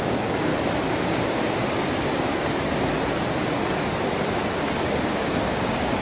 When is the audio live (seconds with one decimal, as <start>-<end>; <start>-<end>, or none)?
0.5-1.0; 2.3-5.0